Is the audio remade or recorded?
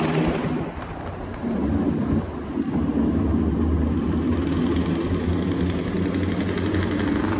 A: recorded